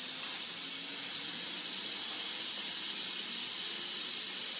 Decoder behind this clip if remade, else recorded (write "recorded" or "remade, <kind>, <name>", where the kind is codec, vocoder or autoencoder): recorded